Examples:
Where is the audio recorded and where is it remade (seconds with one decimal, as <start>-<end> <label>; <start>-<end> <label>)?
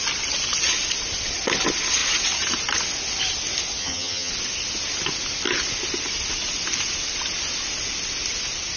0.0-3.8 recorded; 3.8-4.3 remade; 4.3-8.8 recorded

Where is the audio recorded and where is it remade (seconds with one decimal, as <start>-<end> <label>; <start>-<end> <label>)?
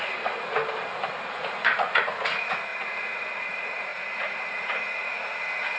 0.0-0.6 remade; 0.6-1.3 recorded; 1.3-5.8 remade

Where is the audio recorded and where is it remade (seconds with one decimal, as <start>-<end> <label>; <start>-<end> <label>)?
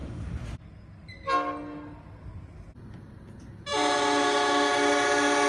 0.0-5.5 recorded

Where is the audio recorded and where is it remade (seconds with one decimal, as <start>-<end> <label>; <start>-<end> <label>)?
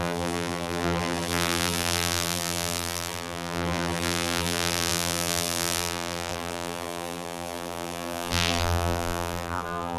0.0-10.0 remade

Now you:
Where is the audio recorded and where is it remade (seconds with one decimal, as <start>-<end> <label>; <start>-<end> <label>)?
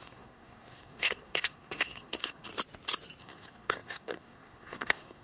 0.0-2.5 remade; 2.5-3.2 recorded; 3.2-5.2 remade